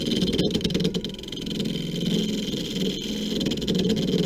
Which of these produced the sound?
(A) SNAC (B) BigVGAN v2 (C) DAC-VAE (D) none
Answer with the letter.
D